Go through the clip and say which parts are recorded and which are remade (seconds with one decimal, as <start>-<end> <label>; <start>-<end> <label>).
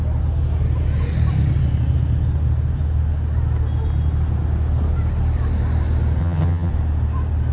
0.0-6.2 recorded; 6.2-6.7 remade; 6.7-7.5 recorded